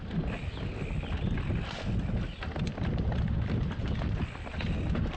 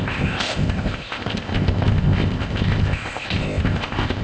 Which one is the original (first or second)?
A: first